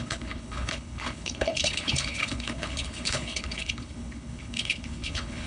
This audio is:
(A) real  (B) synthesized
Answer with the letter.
B